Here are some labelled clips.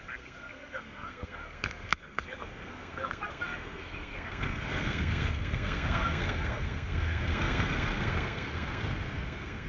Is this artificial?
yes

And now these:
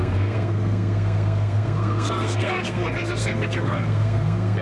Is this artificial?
yes